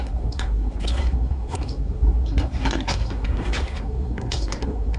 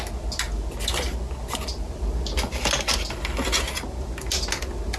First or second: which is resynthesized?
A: first